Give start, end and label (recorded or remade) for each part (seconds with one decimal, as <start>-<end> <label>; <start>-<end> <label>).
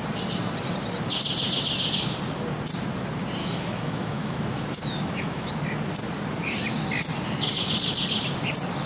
0.0-3.4 recorded; 3.4-5.5 remade; 5.5-8.9 recorded